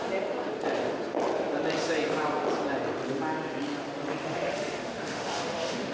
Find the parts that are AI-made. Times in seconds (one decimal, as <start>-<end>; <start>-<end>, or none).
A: 4.2-5.9